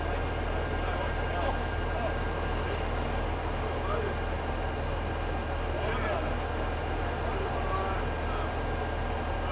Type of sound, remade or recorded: recorded